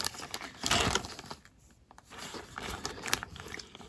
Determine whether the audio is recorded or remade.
remade